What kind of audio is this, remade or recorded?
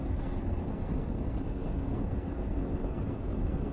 remade